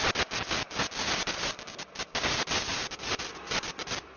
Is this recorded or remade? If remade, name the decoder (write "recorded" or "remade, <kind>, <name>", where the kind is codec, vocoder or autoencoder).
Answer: recorded